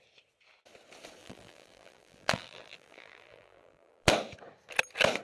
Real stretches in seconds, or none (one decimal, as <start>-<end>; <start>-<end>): 0.0-1.2; 4.1-5.2